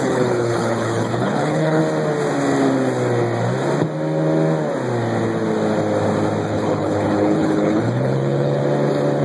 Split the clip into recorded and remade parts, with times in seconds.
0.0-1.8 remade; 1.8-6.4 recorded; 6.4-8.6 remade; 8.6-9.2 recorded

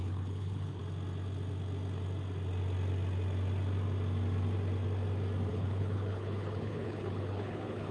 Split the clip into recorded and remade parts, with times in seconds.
0.0-0.8 remade; 0.8-5.5 recorded; 5.5-7.9 remade

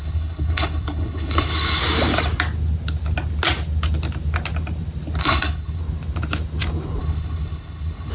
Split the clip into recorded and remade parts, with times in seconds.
0.0-1.8 remade; 1.8-5.2 recorded; 5.2-5.8 remade; 5.8-7.0 recorded; 7.0-8.1 remade

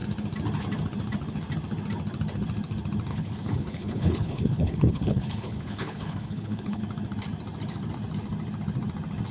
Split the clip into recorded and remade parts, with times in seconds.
0.0-3.1 recorded; 3.1-6.8 remade; 6.8-9.3 recorded

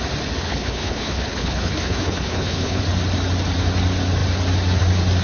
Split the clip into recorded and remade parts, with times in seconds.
0.0-0.4 recorded; 0.4-2.8 remade; 2.8-5.2 recorded

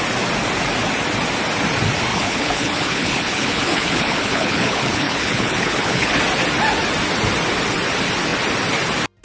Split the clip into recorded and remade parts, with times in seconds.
0.0-2.1 recorded; 2.1-6.2 remade; 6.2-9.2 recorded

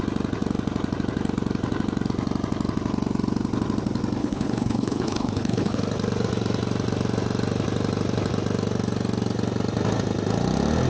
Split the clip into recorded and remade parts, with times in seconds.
0.0-4.2 recorded; 4.2-5.8 remade; 5.8-10.9 recorded